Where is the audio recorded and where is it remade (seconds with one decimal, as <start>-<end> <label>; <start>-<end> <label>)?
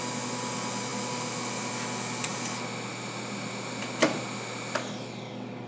0.0-5.7 recorded